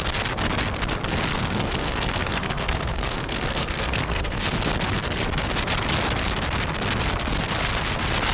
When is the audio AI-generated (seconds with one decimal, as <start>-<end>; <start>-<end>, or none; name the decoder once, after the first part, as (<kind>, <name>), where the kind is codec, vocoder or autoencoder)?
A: 1.3-4.4 (codec, SNAC)